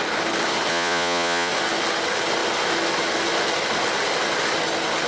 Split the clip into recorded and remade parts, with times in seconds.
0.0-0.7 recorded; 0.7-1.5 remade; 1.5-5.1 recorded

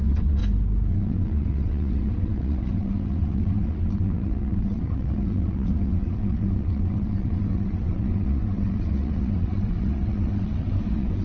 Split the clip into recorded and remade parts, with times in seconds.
0.0-0.4 remade; 0.4-0.9 recorded; 0.9-11.2 remade

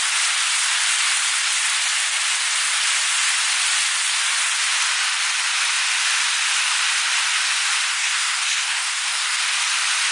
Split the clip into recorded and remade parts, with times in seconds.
0.0-7.9 recorded; 7.9-9.4 remade; 9.4-10.1 recorded

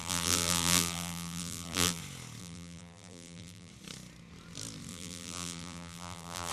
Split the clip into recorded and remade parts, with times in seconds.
0.0-2.0 remade; 2.0-2.4 recorded; 2.4-3.7 remade; 3.7-4.9 recorded; 4.9-6.5 remade